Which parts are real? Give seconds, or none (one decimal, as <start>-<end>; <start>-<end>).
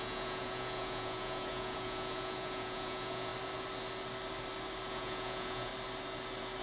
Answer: 3.3-4.9; 5.7-6.6